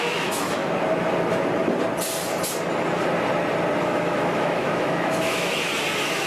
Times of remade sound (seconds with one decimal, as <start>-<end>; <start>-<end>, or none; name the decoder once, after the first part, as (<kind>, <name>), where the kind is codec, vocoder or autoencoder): 0.0-0.6 (autoencoder, DAC-VAE); 3.8-5.7